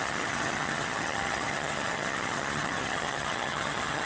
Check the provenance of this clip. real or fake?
fake